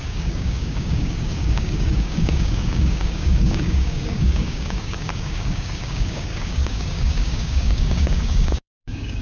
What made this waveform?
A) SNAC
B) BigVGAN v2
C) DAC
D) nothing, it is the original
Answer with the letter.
C